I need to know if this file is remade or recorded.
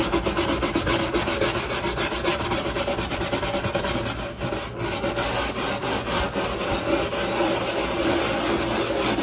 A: recorded